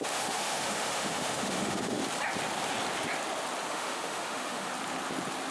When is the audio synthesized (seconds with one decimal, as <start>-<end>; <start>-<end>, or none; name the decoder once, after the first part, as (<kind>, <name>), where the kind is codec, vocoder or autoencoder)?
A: 0.0-2.0 (autoencoder, DAC-VAE); 3.7-4.7